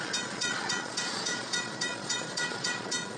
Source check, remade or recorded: remade